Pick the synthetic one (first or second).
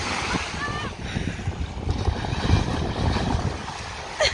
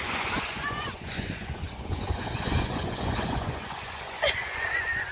second